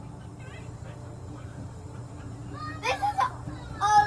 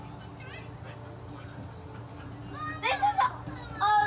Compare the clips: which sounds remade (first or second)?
first